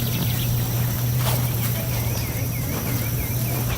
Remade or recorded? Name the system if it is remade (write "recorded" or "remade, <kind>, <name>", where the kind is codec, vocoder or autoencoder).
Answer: remade, vocoder, BigVGAN v2